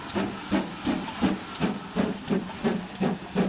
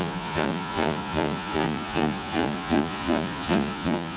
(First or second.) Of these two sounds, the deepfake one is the second